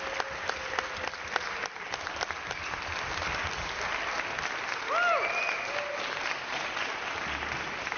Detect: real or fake real